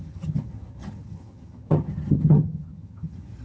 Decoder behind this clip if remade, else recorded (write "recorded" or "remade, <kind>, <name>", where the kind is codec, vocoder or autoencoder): remade, vocoder, HiFi-GAN